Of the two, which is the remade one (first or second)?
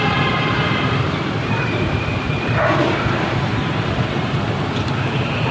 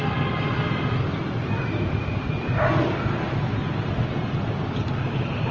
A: first